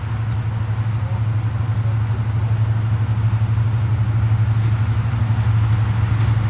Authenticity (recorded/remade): recorded